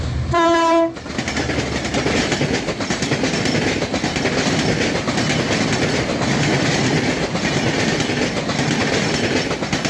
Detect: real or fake real